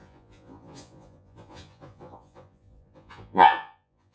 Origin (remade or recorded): remade